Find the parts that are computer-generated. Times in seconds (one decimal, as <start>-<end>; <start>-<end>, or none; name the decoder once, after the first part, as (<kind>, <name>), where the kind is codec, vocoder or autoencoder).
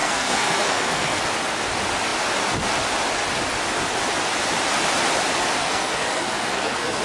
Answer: 0.0-1.2 (codec, SNAC); 5.6-7.0